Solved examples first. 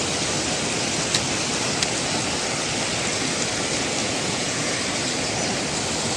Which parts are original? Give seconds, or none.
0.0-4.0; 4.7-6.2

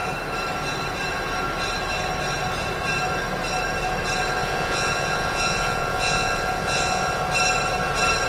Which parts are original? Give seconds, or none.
0.0-4.4; 7.2-8.3

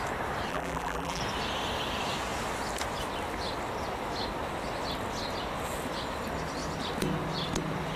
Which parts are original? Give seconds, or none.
0.0-0.5; 1.2-8.0